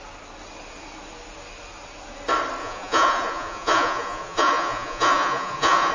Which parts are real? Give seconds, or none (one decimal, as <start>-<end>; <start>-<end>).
0.0-2.6